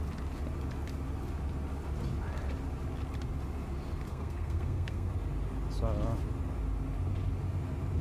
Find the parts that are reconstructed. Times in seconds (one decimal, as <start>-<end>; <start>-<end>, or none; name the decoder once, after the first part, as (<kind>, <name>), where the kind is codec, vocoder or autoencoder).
4.1-5.1 (codec, SNAC)